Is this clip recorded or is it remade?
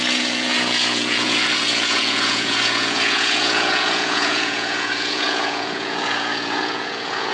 remade